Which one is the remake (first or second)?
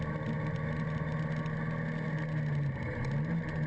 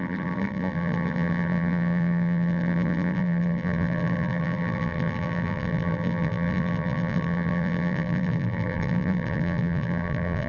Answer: second